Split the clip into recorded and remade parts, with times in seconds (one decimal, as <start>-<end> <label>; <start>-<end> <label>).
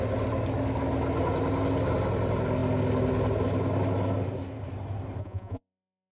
0.0-5.2 recorded; 5.2-6.1 remade